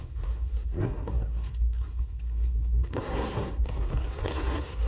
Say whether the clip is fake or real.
fake